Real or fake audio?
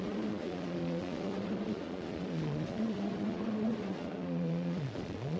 fake